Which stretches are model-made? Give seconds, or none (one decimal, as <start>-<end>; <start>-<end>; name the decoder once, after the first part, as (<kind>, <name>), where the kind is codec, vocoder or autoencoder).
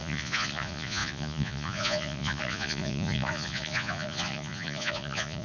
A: 0.0-5.4 (vocoder, Vocos)